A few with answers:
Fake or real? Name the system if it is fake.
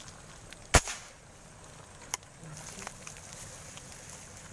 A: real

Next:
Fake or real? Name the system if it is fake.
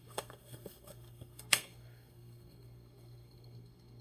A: fake, codec, SNAC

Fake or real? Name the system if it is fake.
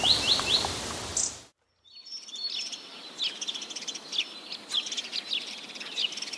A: real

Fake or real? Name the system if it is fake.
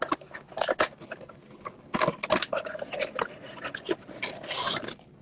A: real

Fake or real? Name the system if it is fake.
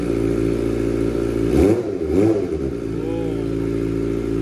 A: real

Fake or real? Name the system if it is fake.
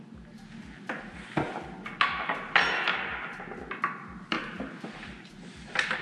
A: real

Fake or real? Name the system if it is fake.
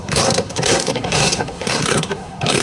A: fake, codec, SNAC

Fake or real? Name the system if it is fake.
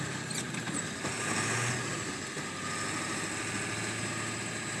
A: real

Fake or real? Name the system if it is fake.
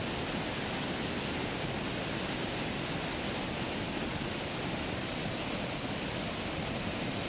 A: real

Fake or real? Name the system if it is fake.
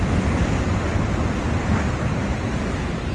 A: real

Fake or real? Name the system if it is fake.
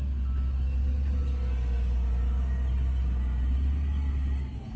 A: real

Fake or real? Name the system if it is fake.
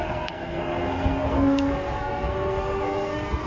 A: fake, codec, SNAC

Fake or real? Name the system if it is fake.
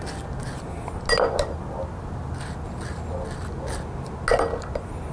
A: real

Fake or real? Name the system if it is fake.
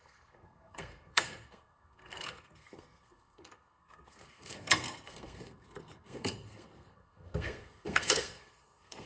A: fake, codec, SNAC